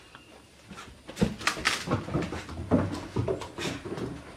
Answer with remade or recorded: recorded